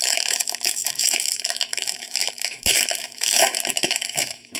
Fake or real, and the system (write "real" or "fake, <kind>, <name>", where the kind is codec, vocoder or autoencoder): fake, autoencoder, DAC-VAE